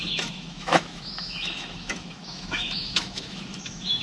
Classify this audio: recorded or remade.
remade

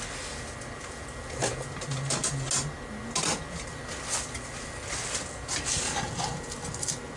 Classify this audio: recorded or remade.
recorded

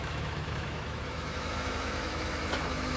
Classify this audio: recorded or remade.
remade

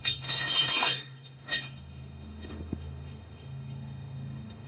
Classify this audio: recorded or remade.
remade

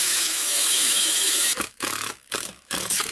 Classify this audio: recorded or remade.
remade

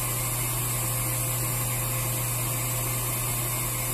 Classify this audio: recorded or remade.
recorded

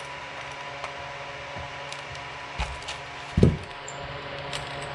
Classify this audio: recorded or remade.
recorded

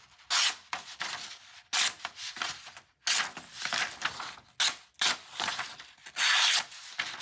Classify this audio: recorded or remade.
recorded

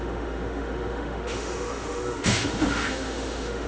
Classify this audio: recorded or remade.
remade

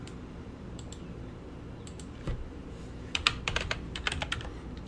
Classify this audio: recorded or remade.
recorded